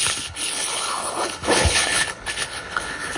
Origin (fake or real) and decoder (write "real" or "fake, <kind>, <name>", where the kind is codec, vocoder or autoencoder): fake, codec, HILCodec